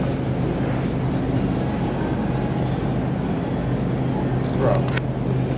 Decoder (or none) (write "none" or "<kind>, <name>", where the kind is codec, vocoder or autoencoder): none